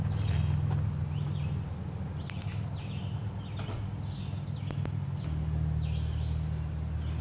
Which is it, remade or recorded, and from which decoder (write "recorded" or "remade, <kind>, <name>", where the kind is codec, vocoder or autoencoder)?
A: recorded